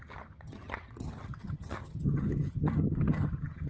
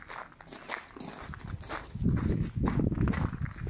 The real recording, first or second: second